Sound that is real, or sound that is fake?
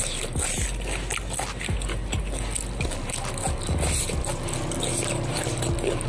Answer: real